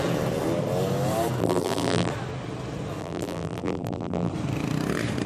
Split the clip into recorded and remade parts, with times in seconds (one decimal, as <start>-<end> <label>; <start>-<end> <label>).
0.0-1.4 recorded; 1.4-2.1 remade; 2.1-3.0 recorded; 3.0-4.3 remade; 4.3-5.3 recorded